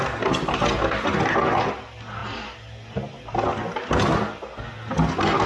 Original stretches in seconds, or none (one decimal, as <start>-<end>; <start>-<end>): 0.0-5.5